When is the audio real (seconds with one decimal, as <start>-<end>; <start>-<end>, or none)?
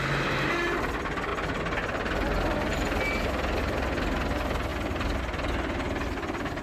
0.0-4.7; 5.2-6.6